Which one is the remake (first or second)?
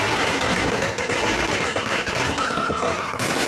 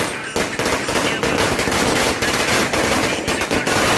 first